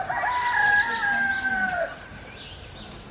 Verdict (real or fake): real